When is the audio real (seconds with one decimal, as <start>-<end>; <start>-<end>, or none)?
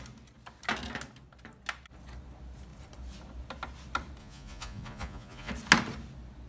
0.0-4.2; 5.5-6.5